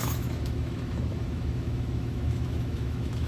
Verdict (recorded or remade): remade